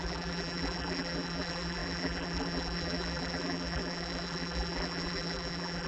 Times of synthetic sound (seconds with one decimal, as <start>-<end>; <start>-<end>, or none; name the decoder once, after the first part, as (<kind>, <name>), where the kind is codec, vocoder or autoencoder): 0.0-5.9 (vocoder, BigVGAN v2)